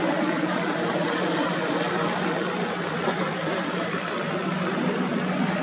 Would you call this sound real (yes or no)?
no